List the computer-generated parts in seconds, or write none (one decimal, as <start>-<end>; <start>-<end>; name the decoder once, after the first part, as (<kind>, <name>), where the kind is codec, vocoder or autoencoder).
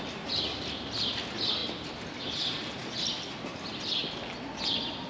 none